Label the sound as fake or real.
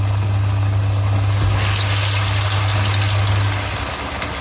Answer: real